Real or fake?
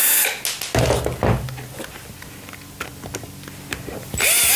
real